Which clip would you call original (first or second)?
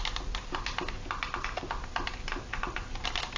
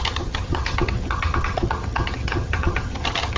first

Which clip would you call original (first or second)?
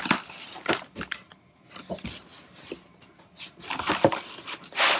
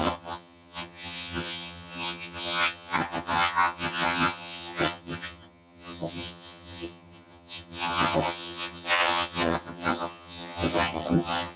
first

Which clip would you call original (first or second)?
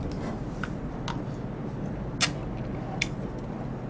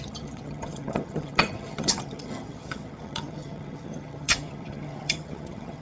first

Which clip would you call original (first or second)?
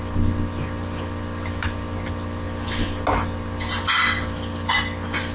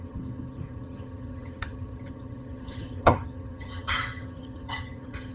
first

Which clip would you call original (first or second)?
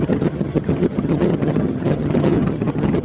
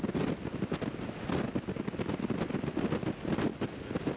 second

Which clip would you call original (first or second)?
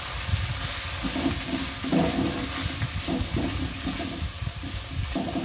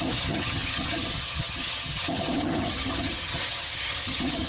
first